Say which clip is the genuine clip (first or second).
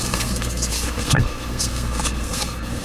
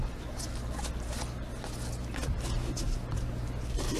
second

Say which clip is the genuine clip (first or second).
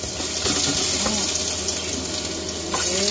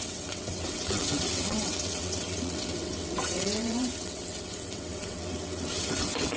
first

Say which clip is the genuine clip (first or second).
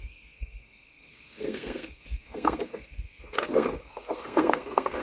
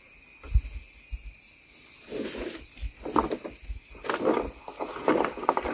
second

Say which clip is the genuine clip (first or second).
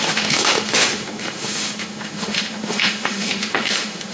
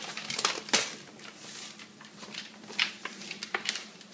second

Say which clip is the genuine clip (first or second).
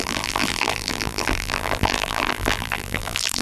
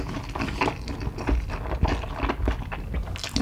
second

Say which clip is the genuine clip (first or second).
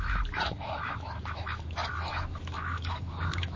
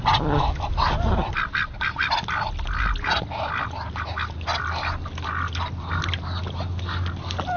second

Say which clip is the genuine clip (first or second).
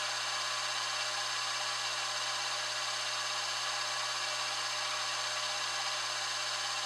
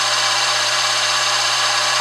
first